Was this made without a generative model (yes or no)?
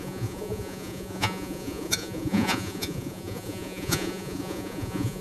no